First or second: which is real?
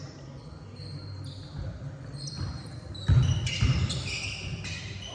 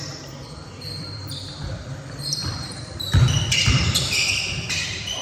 first